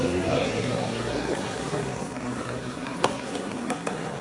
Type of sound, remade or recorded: remade